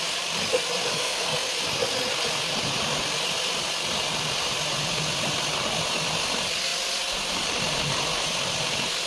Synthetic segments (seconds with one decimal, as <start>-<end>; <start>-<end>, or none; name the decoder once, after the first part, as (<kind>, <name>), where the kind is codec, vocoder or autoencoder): 0.9-1.5 (codec, SNAC)